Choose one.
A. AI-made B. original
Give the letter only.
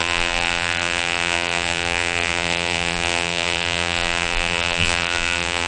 A